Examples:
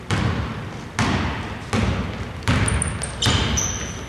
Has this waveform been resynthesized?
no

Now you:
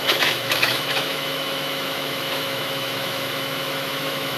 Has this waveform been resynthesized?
yes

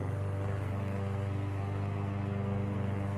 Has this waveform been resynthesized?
yes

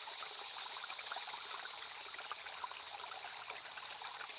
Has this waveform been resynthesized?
no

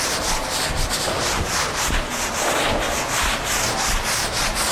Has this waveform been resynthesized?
no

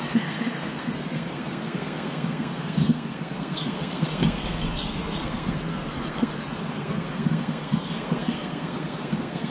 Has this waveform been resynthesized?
yes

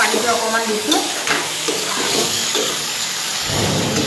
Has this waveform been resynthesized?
yes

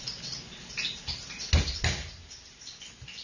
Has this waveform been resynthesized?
no